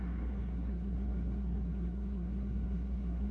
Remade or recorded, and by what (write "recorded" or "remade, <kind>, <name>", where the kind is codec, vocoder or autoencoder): remade, codec, SNAC